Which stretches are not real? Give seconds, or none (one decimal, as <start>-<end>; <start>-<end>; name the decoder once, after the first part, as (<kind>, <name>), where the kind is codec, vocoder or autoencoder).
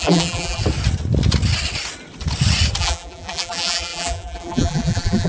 0.0-0.6 (vocoder, BigVGAN v2); 2.8-5.3